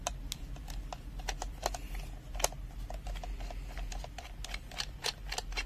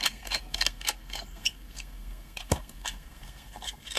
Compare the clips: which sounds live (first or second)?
first